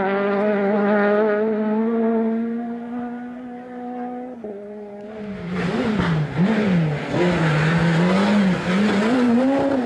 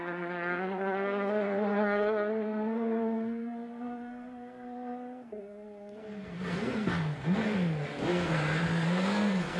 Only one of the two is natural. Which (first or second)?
first